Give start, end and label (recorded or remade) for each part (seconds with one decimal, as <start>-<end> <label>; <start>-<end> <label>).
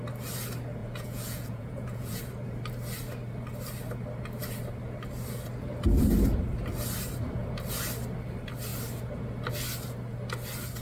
0.0-0.8 recorded; 0.8-2.2 remade; 2.2-10.8 recorded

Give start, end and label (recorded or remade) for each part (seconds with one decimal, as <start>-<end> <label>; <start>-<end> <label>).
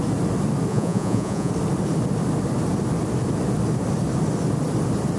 0.0-0.7 recorded; 0.7-1.5 remade; 1.5-5.2 recorded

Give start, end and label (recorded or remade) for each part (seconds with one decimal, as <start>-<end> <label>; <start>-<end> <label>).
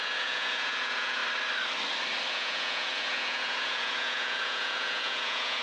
0.0-1.2 remade; 1.2-2.3 recorded; 2.3-5.6 remade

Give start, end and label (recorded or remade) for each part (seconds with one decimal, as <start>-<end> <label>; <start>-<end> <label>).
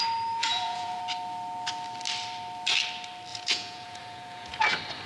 0.0-0.4 recorded; 0.4-1.0 remade; 1.0-3.3 recorded; 3.3-4.5 remade; 4.5-5.1 recorded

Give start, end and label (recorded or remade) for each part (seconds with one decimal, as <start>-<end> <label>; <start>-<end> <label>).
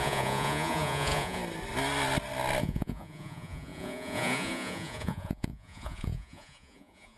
0.0-1.4 remade; 1.4-2.6 recorded; 2.6-7.2 remade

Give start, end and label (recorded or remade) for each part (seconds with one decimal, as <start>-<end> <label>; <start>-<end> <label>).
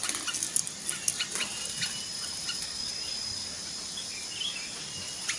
0.0-5.4 recorded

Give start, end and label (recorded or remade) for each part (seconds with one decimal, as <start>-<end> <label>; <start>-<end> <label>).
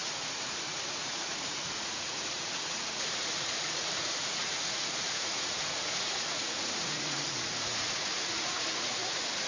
0.0-9.5 remade